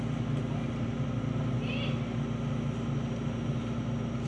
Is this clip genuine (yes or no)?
yes